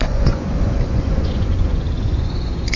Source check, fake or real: fake